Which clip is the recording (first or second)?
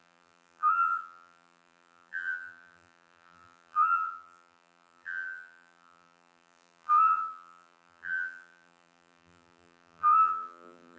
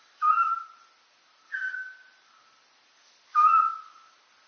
second